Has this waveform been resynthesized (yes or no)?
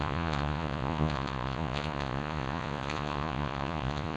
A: yes